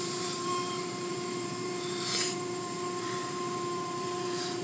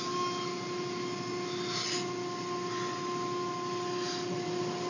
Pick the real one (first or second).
second